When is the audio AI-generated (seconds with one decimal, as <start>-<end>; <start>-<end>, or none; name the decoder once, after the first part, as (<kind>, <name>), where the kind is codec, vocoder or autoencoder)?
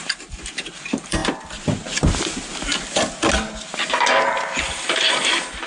0.0-1.2 (vocoder, BigVGAN v2); 4.6-5.7